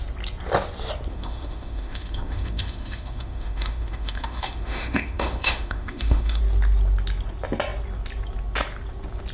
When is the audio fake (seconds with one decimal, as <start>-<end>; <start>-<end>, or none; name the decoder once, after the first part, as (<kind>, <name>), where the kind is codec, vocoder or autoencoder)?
1.1-6.4 (autoencoder, DAC-VAE)

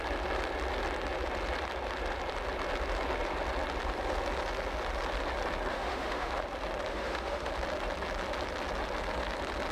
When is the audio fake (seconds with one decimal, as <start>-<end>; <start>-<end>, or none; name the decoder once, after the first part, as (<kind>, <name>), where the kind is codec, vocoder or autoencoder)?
5.7-6.3 (autoencoder, DAC-VAE); 6.9-7.5

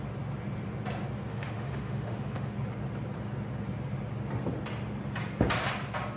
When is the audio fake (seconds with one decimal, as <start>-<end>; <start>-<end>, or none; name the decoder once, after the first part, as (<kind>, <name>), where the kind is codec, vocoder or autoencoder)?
1.3-2.5 (autoencoder, DAC-VAE)

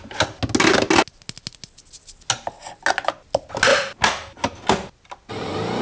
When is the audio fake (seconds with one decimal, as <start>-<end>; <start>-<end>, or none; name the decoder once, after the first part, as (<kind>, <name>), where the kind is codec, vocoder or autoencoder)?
none

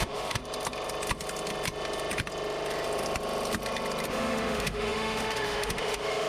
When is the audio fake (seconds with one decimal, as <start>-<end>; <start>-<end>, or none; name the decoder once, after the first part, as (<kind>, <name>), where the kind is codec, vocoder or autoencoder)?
0.0-0.4 (autoencoder, DAC-VAE); 4.1-6.3

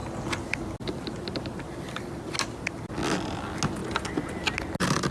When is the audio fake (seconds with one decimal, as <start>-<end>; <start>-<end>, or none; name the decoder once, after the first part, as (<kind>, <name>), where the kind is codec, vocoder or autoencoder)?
none

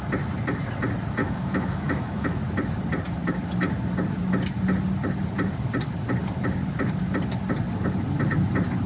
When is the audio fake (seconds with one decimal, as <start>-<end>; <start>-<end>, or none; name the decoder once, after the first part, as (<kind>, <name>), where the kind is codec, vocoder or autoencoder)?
1.2-2.4 (autoencoder, DAC-VAE)